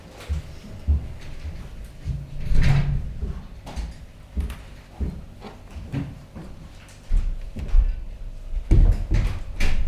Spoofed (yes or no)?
no